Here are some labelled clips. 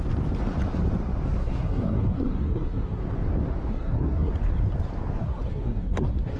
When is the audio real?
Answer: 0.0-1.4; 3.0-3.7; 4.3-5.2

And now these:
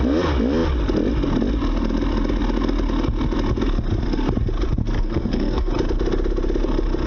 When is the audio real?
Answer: 0.0-4.8; 5.7-7.1

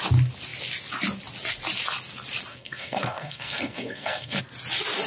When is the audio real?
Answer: 0.0-2.5; 4.4-5.1

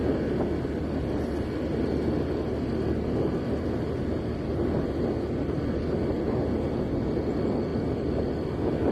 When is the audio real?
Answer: 0.0-8.9

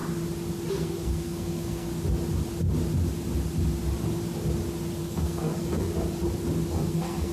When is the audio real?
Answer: 0.0-0.7; 1.9-4.9; 5.9-6.7